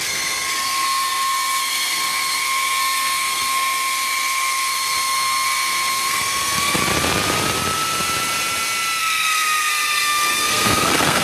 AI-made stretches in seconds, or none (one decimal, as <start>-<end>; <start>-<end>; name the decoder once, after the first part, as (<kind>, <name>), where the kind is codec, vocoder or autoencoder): 0.0-6.8 (codec, SNAC); 9.0-11.2